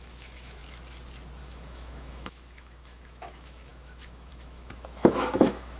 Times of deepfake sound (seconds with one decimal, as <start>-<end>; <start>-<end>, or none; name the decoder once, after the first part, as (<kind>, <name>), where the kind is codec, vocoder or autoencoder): 0.0-0.6 (autoencoder, DAC-VAE); 1.4-5.8